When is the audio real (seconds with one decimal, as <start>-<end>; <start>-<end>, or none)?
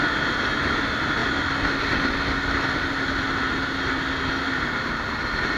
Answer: 0.0-5.6